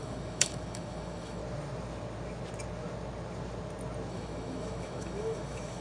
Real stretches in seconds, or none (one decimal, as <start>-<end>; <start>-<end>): 1.4-4.1